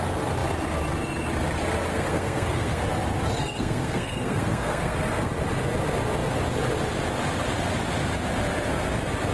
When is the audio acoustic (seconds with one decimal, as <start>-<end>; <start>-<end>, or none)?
0.0-1.9; 2.8-3.4; 5.3-9.3